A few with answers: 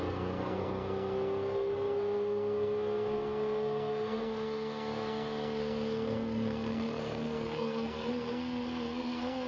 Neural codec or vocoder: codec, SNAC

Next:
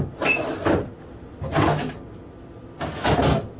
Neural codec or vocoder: none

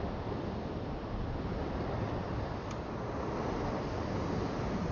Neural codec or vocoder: none